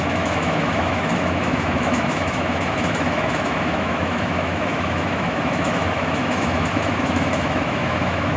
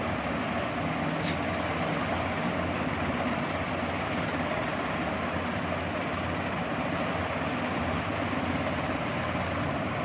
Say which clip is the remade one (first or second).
first